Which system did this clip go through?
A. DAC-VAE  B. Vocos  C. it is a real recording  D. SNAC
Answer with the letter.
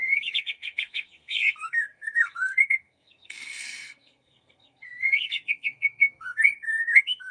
D